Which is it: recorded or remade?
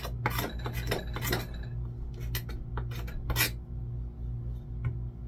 recorded